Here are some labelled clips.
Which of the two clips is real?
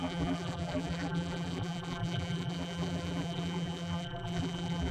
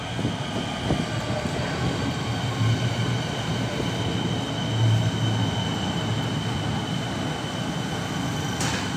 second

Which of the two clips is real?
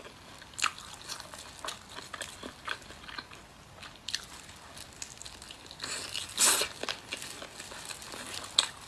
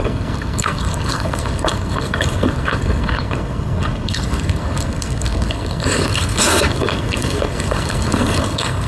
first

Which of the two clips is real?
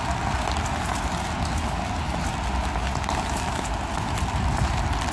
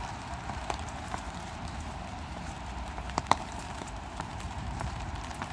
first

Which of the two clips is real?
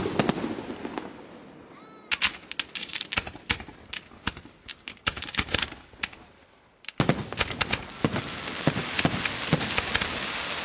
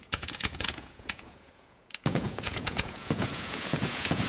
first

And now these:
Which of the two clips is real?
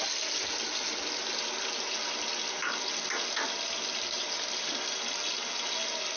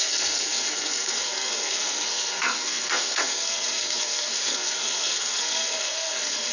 first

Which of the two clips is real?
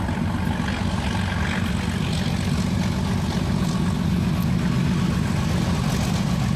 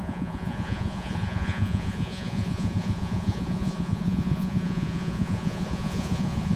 first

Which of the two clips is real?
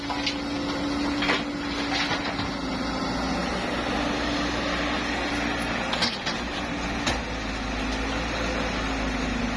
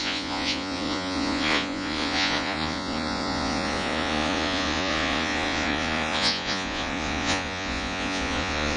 first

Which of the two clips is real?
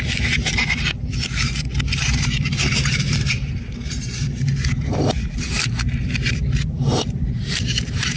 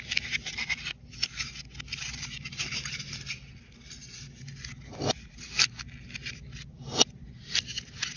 second